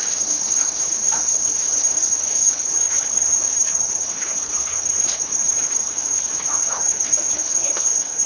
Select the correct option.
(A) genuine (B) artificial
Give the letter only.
B